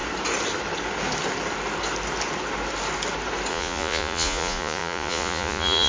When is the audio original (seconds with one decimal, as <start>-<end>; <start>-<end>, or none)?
0.0-3.5

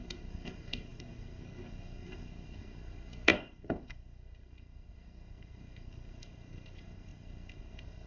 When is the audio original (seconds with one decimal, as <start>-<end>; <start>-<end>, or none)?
none

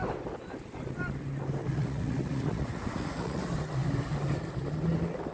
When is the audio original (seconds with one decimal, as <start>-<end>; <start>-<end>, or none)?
0.0-1.6; 3.4-5.3

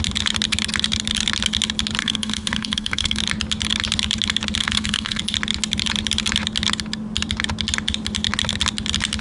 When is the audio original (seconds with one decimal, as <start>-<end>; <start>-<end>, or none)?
0.0-2.0; 3.2-4.6; 5.2-9.2

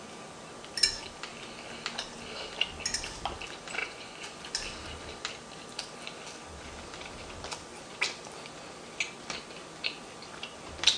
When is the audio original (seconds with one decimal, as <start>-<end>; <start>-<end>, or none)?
0.0-3.8; 4.4-11.0